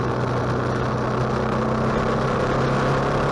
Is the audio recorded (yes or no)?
yes